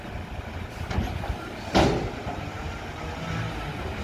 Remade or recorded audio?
recorded